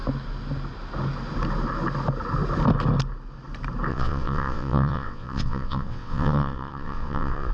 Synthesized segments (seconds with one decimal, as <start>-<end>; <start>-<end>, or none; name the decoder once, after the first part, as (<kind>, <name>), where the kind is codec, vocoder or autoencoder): 3.9-7.5 (vocoder, WaveNeXt)